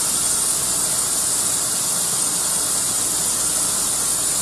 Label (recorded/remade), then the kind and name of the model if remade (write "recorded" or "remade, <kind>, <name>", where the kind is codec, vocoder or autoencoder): recorded